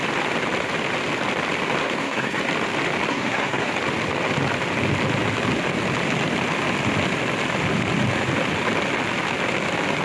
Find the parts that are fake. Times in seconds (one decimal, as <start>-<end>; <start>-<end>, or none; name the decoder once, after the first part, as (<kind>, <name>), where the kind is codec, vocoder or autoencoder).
1.8-2.4 (codec, SNAC); 3.1-3.7